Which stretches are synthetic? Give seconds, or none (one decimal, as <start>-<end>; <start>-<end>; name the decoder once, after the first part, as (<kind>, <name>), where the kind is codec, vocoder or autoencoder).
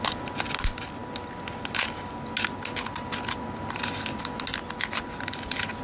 none